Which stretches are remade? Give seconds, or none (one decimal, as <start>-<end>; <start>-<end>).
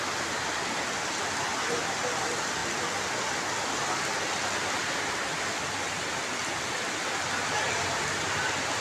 none